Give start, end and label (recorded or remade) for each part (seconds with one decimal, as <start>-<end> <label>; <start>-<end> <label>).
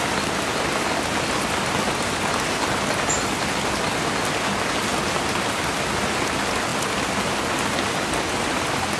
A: 0.0-9.0 recorded